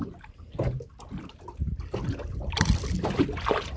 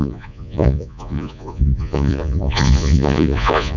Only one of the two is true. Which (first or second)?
first